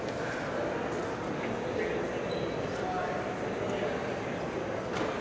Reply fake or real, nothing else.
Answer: real